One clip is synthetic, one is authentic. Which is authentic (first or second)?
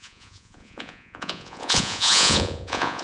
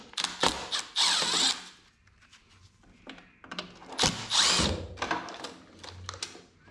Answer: second